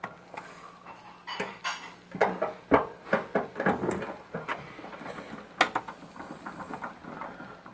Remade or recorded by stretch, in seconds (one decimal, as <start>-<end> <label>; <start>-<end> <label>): 0.0-7.7 recorded